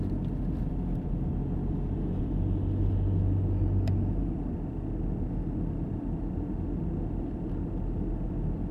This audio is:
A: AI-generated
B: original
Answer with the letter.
B